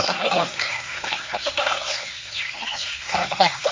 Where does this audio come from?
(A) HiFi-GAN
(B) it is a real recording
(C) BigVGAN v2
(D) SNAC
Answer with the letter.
D